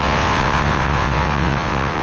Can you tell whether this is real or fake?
fake